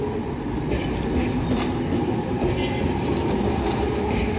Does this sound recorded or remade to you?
recorded